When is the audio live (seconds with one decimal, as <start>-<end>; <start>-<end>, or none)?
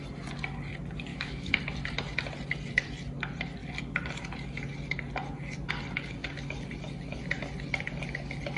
0.0-1.1; 1.6-8.6